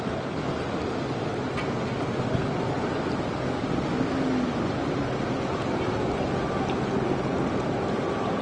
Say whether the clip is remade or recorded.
recorded